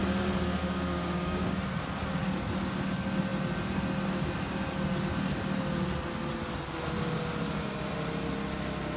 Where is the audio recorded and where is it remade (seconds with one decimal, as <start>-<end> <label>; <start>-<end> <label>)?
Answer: 0.0-0.6 recorded; 0.6-1.5 remade; 1.5-9.0 recorded